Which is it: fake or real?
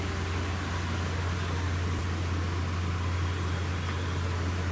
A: real